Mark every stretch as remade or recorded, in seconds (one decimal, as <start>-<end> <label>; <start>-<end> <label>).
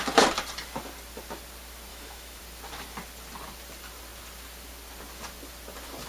0.0-1.9 recorded; 1.9-2.4 remade; 2.4-6.1 recorded